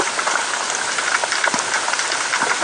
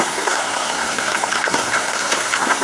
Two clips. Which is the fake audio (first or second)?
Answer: second